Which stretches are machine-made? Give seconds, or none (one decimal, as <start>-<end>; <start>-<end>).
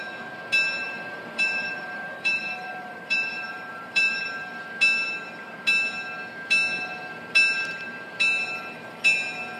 0.8-4.6